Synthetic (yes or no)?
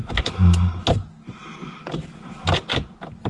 no